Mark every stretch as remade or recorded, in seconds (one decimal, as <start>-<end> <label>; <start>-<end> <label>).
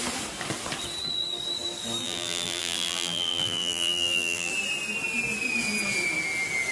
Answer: 0.0-2.0 recorded; 2.0-4.5 remade; 4.5-6.7 recorded